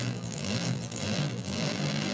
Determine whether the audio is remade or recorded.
remade